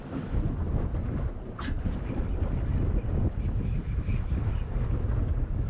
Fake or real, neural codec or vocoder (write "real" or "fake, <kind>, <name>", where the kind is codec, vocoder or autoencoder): real